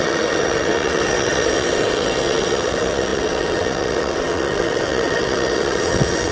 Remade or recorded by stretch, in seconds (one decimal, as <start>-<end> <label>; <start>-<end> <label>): 0.0-6.3 remade